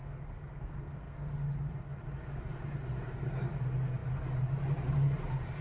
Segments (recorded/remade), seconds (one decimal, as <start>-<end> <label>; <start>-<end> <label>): 0.0-1.3 remade; 1.3-5.6 recorded